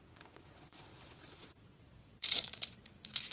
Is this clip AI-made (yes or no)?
yes